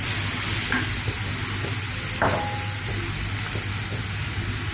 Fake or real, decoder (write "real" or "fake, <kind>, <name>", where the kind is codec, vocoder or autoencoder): real